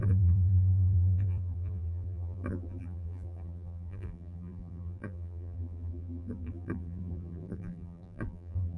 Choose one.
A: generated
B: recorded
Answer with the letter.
A